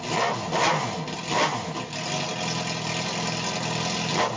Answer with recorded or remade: recorded